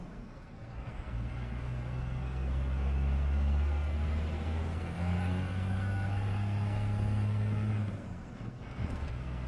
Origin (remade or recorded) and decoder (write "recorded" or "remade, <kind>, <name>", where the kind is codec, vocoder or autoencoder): remade, codec, SNAC